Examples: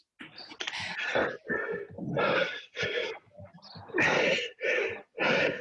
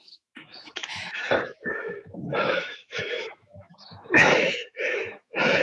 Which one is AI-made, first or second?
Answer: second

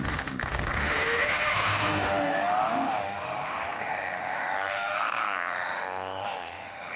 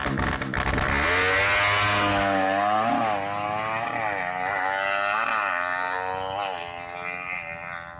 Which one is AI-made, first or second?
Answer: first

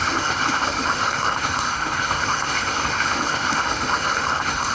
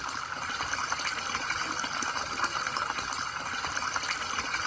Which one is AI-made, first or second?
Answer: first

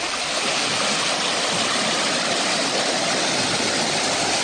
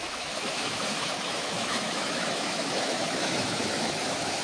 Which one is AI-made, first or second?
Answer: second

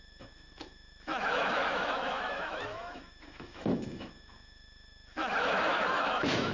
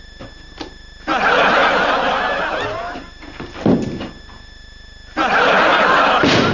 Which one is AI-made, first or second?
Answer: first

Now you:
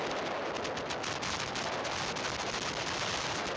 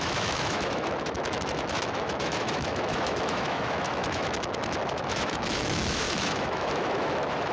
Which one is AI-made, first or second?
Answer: second